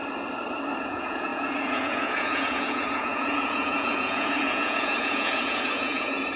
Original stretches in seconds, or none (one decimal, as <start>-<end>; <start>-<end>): 0.0-0.8